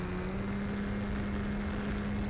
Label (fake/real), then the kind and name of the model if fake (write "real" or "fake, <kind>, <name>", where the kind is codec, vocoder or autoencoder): real